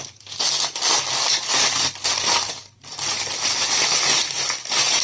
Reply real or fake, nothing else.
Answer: real